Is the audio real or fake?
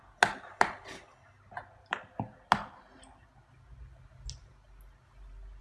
real